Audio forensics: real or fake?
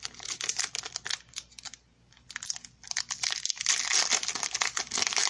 real